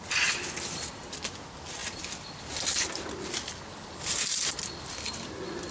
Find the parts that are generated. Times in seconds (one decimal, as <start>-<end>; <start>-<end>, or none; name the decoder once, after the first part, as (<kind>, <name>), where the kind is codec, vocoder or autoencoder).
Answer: none